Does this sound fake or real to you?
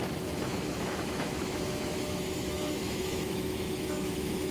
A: fake